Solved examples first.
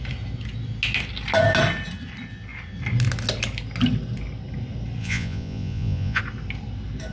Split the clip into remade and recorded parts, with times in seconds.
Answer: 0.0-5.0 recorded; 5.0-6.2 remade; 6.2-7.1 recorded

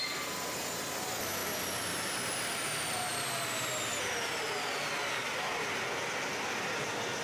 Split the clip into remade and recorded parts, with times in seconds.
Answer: 0.0-7.2 recorded

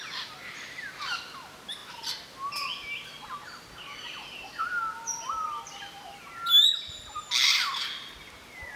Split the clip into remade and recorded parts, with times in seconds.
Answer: 0.0-8.8 recorded

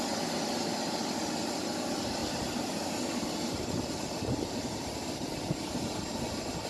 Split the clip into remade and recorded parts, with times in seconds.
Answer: 0.0-2.2 recorded; 2.2-6.2 remade; 6.2-6.7 recorded

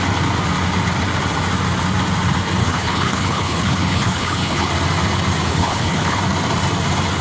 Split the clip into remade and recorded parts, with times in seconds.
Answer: 0.0-2.6 recorded; 2.6-4.7 remade; 4.7-5.5 recorded; 5.5-6.2 remade; 6.2-7.2 recorded

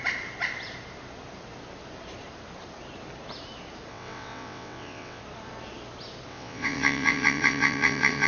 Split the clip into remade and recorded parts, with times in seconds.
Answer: 0.0-3.9 recorded; 3.9-5.2 remade; 5.2-6.3 recorded; 6.3-8.3 remade

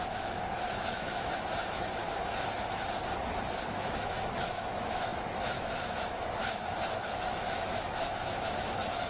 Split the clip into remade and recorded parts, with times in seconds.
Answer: 0.0-2.0 remade; 2.0-3.7 recorded; 3.7-9.1 remade